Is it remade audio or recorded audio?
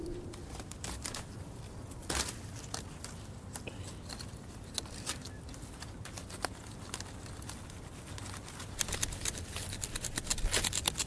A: recorded